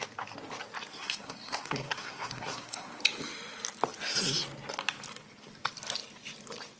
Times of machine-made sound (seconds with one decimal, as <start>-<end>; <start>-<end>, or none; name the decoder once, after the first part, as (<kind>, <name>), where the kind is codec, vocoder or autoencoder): 0.9-3.0 (codec, SNAC)